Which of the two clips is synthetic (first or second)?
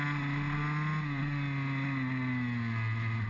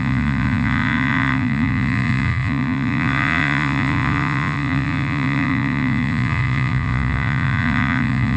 second